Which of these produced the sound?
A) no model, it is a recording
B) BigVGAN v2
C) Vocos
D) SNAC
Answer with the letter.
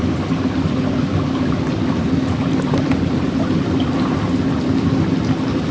A